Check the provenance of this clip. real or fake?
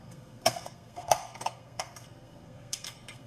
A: fake